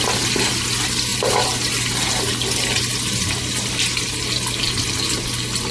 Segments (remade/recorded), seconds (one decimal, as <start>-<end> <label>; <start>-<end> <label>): 0.0-5.7 recorded